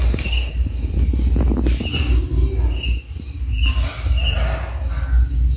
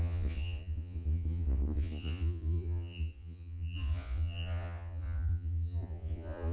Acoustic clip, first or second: first